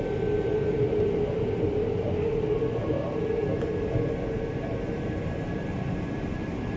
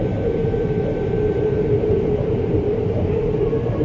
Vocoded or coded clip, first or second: second